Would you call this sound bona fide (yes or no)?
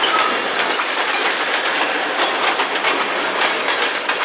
yes